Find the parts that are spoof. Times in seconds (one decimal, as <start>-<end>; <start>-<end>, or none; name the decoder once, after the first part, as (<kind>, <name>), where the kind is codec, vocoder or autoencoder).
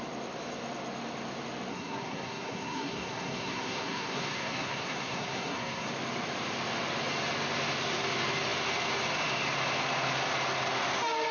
1.7-5.9 (codec, SNAC)